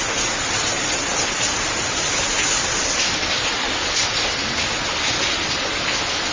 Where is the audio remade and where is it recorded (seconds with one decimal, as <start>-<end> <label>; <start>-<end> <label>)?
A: 0.0-6.3 recorded